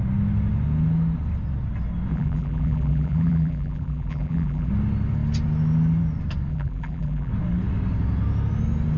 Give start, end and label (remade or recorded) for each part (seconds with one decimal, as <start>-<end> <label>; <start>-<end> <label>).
0.0-2.1 recorded; 2.1-4.7 remade; 4.7-6.5 recorded; 6.5-7.3 remade; 7.3-9.0 recorded